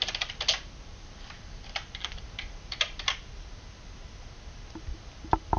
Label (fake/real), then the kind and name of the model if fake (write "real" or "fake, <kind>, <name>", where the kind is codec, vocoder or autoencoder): real